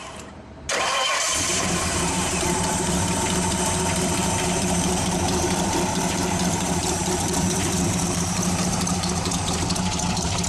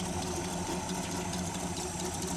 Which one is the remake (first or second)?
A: first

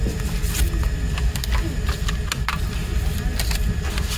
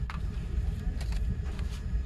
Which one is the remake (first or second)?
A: second